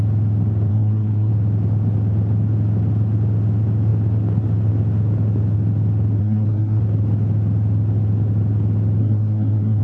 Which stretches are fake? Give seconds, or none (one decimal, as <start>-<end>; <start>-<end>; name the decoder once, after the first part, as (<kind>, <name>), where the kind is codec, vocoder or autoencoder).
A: 0.7-1.3 (codec, SNAC); 6.2-6.8; 9.0-9.8